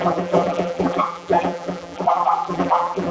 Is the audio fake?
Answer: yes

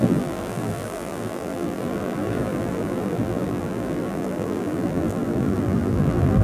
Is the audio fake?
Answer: yes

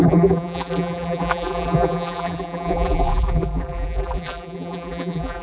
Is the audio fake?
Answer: yes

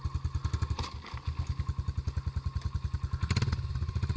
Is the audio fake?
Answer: no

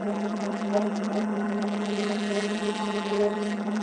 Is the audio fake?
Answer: yes